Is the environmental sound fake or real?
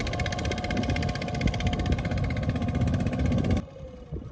real